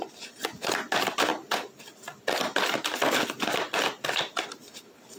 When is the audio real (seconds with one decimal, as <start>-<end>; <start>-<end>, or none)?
0.0-5.2